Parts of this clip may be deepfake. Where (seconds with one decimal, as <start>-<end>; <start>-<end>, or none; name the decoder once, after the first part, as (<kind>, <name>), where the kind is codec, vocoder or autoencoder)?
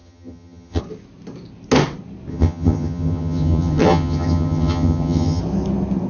0.0-0.8 (vocoder, HiFi-GAN); 2.3-5.4